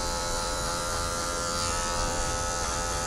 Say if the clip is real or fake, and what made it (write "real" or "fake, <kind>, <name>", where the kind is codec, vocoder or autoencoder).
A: fake, vocoder, BigVGAN v2